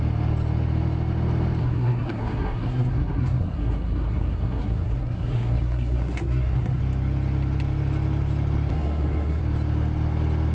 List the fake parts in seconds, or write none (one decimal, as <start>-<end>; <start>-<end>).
1.6-6.8; 8.7-9.4